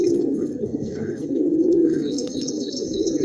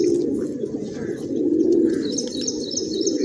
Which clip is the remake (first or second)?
first